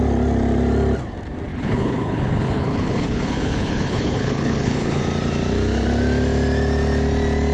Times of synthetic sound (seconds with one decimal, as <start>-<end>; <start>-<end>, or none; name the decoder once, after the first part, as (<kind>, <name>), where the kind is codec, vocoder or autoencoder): 1.5-5.0 (codec, HILCodec)